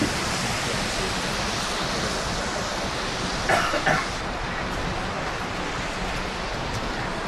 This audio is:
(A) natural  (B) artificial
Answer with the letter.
A